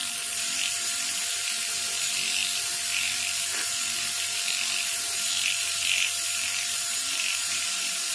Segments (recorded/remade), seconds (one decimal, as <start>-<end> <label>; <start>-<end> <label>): 0.0-2.4 remade; 2.4-3.0 recorded; 3.0-8.1 remade